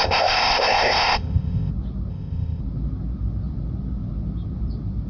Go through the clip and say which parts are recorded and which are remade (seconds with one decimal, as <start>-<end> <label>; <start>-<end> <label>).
0.0-1.7 remade; 1.7-2.1 recorded; 2.1-2.6 remade; 2.6-5.1 recorded